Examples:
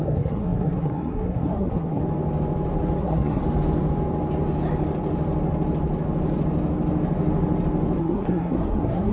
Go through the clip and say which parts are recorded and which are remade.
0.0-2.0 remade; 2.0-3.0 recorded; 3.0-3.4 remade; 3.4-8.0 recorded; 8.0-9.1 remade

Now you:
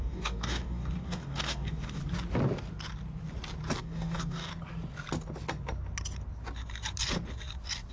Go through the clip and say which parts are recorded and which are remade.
0.0-2.0 remade; 2.0-3.8 recorded; 3.8-4.5 remade; 4.5-7.9 recorded

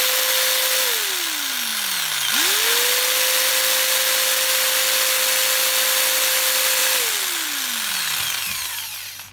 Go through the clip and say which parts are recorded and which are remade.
0.0-9.3 recorded